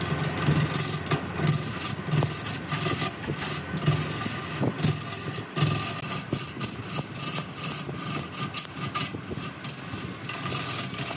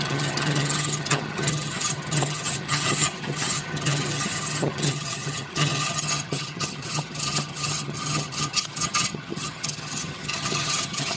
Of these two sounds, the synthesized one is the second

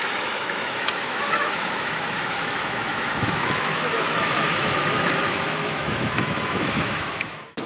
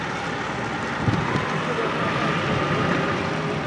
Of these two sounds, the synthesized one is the first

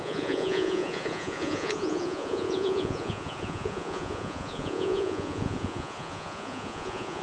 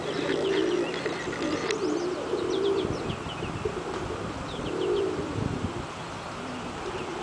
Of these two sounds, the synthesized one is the first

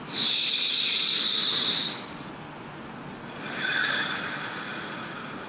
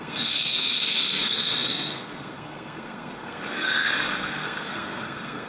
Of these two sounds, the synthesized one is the second